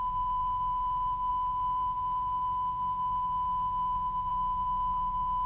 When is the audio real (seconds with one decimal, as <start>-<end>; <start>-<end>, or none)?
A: 0.0-5.5

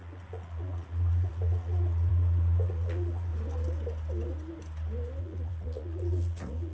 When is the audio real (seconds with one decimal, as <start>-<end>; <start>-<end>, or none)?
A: 3.3-5.2

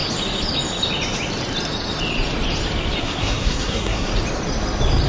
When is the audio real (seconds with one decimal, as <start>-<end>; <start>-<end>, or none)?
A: 0.0-3.0; 4.1-5.1